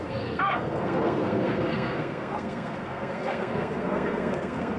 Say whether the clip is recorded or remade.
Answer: remade